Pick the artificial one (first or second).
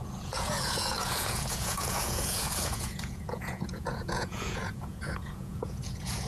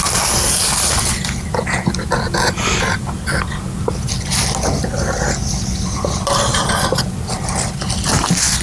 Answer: first